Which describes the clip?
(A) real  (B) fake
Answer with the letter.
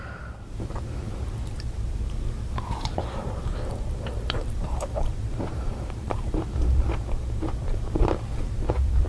B